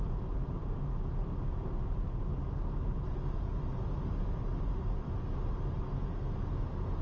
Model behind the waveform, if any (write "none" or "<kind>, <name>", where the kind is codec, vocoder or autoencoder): none